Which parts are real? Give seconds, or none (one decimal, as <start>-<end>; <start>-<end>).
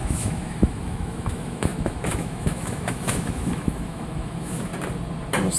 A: 4.7-5.6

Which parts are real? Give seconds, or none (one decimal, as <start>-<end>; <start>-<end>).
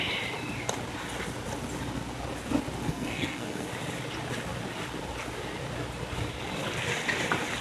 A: 0.0-2.8; 3.7-7.6